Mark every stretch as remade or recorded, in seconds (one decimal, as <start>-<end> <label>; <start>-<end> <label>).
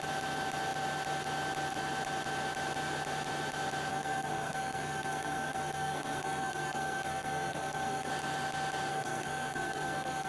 0.0-3.9 recorded; 3.9-8.1 remade; 8.1-8.9 recorded; 8.9-10.3 remade